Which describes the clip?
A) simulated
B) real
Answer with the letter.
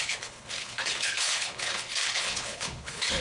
A